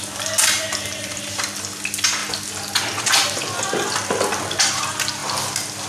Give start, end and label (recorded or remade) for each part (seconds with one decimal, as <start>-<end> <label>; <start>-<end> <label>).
0.0-5.9 recorded